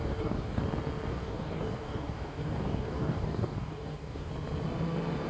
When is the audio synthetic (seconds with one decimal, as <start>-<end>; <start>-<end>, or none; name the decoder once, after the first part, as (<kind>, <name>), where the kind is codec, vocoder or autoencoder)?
0.0-0.6 (codec, DAC); 1.1-4.3